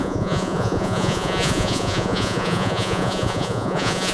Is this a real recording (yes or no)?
no